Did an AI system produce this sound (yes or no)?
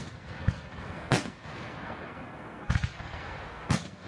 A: yes